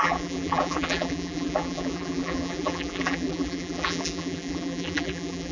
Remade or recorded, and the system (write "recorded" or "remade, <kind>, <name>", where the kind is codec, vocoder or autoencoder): remade, vocoder, BigVGAN v2